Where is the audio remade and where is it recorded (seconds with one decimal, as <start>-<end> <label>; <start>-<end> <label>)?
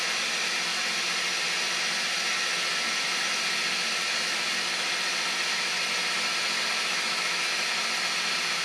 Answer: 0.0-6.8 recorded; 6.8-7.7 remade; 7.7-8.6 recorded